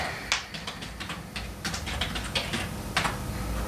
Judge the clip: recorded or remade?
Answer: recorded